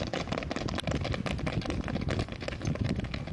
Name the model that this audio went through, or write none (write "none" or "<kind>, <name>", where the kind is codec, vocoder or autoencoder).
none